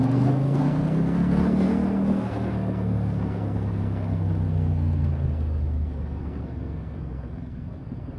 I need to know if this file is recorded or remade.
remade